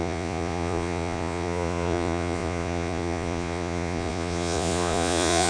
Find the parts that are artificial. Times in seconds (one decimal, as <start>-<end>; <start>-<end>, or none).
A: 0.0-5.5